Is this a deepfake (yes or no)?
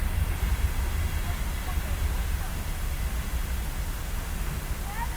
no